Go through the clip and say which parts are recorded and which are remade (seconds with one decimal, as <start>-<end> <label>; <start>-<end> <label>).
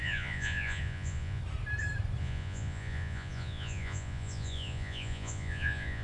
0.0-1.4 remade; 1.4-2.2 recorded; 2.2-6.0 remade